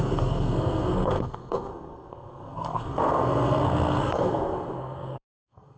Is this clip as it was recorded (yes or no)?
no